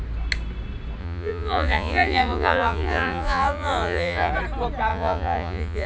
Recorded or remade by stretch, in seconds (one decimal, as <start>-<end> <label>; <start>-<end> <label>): 0.0-1.0 recorded; 1.0-4.3 remade; 4.3-4.9 recorded; 4.9-5.9 remade